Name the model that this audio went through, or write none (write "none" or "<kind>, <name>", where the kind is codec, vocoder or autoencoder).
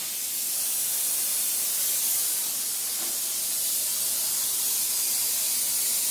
none